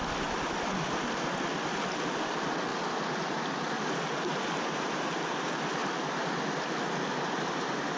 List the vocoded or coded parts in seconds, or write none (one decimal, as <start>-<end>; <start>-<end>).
none